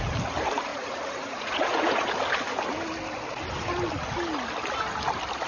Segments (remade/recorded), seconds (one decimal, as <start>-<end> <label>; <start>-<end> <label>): 0.0-0.7 recorded; 0.7-2.1 remade; 2.1-5.5 recorded